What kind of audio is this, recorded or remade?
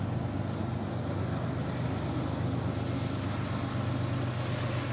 recorded